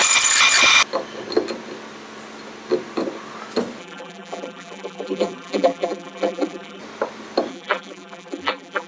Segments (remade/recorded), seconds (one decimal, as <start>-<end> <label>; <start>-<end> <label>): 0.0-3.8 recorded; 3.8-6.8 remade; 6.8-7.5 recorded; 7.5-8.9 remade